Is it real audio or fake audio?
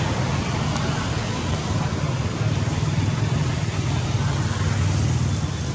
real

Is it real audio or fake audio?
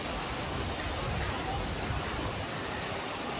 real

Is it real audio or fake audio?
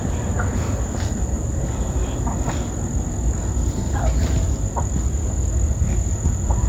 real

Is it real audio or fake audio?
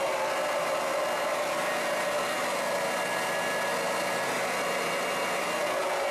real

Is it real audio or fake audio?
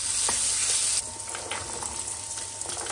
real